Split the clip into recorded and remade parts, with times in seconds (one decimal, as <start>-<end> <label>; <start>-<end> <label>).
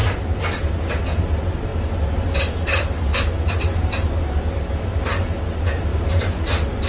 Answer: 0.0-0.8 remade; 0.8-5.9 recorded; 5.9-6.9 remade